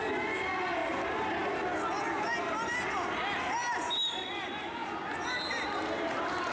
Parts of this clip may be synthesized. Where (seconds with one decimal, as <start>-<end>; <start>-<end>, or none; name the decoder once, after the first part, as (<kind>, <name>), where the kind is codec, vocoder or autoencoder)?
none